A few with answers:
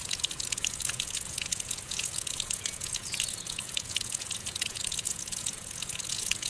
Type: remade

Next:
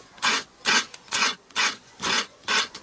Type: remade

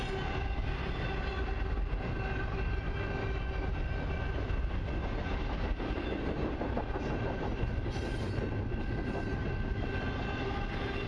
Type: recorded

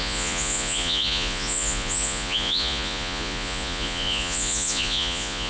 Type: remade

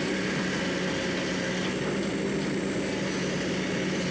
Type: recorded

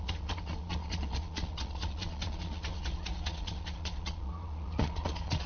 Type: remade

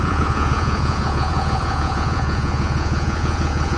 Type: remade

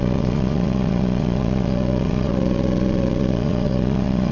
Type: remade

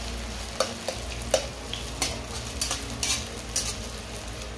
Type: recorded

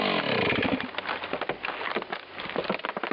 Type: recorded